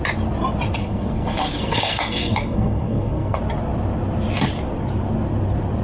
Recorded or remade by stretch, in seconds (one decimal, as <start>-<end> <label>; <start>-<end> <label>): 0.0-0.8 recorded; 0.8-3.4 remade; 3.4-5.8 recorded